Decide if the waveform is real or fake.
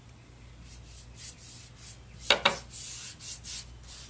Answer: real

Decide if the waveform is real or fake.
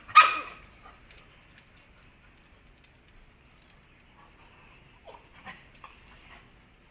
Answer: real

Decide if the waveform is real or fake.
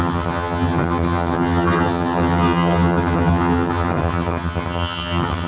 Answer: fake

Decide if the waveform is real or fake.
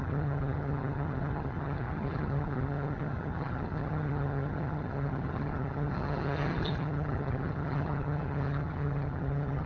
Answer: fake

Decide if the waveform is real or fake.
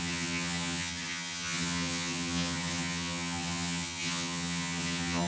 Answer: fake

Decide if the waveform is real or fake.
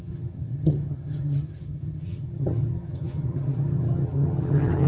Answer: fake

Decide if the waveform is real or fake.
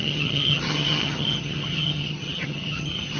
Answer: fake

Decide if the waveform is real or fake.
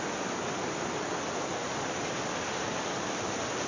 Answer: real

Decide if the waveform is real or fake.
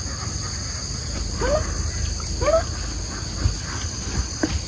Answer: real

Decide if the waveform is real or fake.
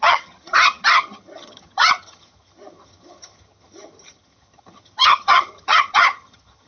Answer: fake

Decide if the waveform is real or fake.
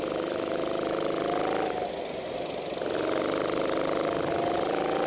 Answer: real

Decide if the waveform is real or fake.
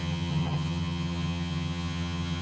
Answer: fake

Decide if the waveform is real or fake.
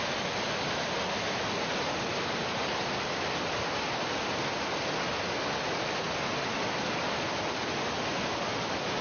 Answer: real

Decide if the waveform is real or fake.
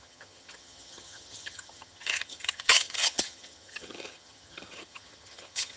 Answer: fake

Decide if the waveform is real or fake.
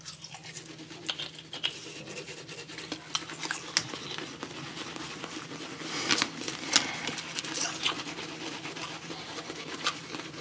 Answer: real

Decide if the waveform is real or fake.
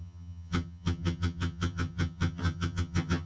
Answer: fake